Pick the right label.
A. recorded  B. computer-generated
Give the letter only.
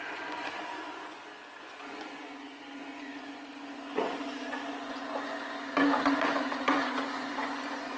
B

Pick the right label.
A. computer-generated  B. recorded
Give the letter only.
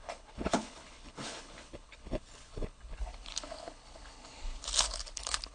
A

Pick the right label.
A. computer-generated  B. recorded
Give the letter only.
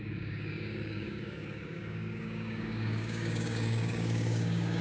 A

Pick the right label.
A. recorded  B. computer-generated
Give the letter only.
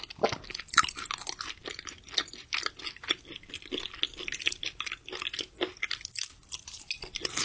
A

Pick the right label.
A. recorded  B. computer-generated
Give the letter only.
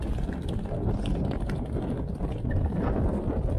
A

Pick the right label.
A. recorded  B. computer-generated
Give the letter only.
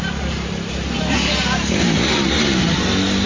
A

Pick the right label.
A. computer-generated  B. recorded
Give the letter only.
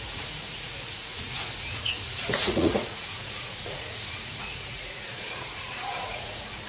A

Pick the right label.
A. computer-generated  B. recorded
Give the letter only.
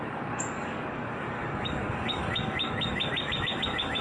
A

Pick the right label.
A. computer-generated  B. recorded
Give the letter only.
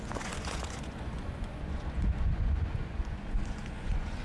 A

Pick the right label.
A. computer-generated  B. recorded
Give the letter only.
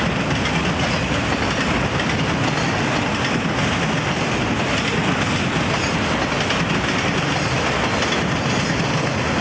B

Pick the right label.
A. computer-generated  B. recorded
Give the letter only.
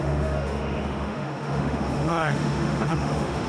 A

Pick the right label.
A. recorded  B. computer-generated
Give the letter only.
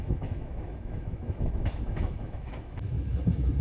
B